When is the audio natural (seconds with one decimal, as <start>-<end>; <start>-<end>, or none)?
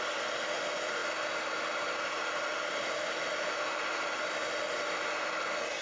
0.0-5.8